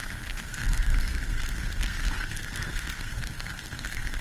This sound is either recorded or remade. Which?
remade